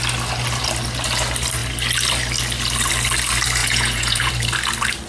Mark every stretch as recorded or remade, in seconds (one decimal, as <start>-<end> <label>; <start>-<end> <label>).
0.0-3.6 recorded; 3.6-4.3 remade; 4.3-5.1 recorded